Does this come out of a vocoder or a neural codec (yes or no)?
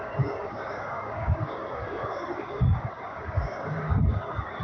yes